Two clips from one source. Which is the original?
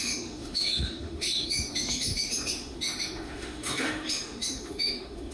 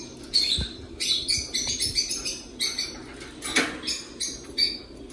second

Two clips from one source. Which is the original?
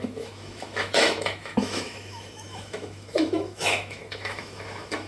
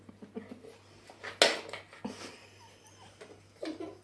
second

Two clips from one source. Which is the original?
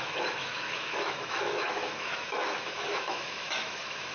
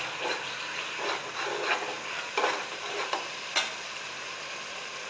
second